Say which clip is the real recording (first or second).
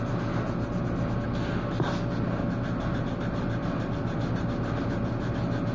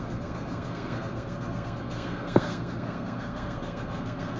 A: first